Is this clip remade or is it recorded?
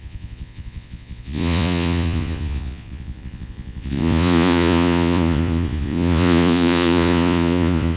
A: remade